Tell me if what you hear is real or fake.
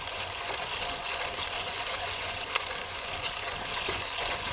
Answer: fake